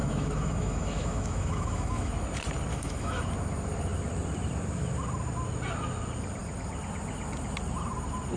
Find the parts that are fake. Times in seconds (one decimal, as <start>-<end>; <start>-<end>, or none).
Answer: 0.0-2.1; 2.7-3.2